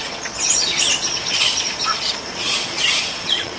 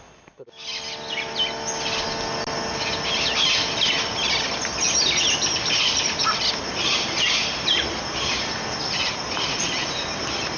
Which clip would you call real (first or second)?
second